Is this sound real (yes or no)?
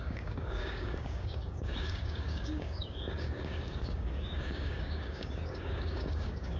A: no